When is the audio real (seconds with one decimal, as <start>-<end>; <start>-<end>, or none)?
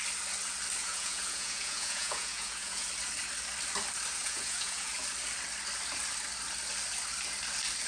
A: 0.0-0.8; 2.9-4.2; 4.9-7.9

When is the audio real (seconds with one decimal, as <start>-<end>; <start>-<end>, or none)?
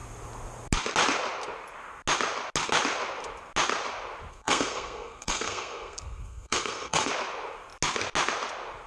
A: 0.0-4.3; 7.1-8.9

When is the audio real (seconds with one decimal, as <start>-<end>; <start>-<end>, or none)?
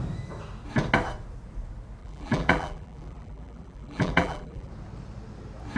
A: 0.0-2.0; 4.7-5.8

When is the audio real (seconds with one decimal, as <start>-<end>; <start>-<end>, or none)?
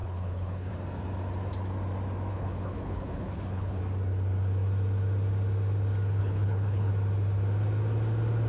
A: 0.7-2.3; 3.8-6.2; 6.9-8.5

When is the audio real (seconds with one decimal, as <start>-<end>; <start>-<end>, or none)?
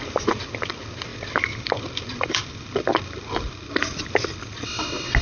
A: 0.0-1.1; 4.2-5.2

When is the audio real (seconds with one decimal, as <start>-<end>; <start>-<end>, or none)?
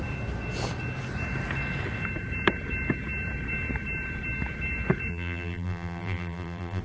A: 0.0-5.1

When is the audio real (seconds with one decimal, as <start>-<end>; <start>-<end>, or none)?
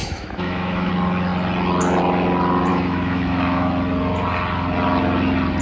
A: 0.9-2.7; 3.7-5.6